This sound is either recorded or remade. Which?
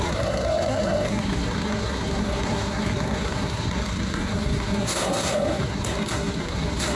remade